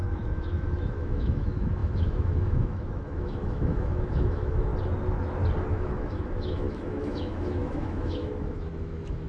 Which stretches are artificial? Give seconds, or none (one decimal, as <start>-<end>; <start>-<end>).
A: 0.0-4.7; 5.7-9.3